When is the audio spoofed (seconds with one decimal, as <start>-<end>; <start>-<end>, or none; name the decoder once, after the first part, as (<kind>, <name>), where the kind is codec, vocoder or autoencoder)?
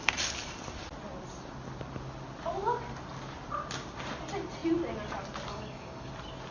5.5-6.1 (codec, DAC)